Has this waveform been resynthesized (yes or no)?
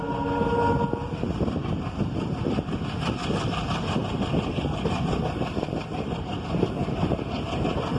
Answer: no